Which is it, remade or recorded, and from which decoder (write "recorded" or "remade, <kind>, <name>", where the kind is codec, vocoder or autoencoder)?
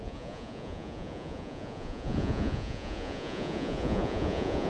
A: remade, vocoder, Vocos